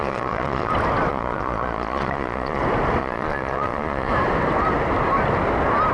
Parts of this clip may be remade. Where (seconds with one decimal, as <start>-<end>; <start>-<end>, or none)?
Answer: 0.0-0.7; 1.1-2.6; 3.0-4.1